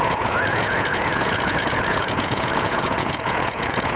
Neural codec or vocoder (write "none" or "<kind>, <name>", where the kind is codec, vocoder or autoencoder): vocoder, Vocos